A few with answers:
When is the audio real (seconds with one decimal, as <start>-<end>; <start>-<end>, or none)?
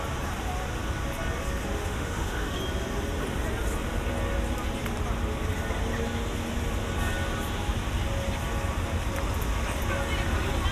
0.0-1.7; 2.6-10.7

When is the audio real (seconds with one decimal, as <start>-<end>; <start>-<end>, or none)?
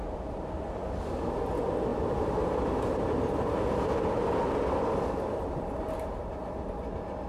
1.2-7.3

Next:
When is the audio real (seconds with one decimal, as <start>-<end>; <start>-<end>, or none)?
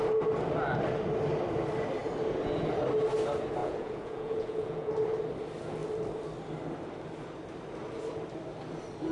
0.0-3.6; 4.9-9.1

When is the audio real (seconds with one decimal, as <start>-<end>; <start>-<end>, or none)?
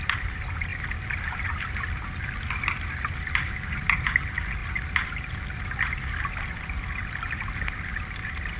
0.0-8.6